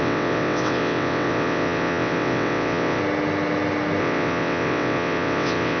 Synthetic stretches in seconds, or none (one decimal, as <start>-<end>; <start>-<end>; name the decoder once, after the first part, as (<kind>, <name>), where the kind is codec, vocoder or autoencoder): 0.0-3.0 (vocoder, WaveNeXt); 4.0-5.8